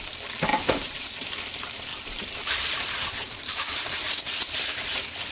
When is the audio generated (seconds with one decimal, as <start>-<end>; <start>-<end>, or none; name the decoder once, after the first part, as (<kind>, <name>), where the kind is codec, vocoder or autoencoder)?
0.5-1.3 (vocoder, BigVGAN v2); 1.9-4.2